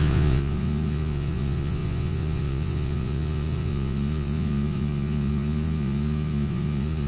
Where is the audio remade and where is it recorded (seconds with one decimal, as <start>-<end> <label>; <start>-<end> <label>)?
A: 0.0-7.1 remade